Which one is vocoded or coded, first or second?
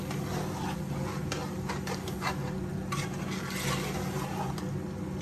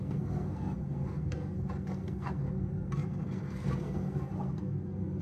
second